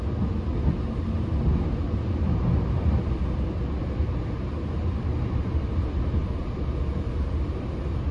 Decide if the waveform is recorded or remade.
recorded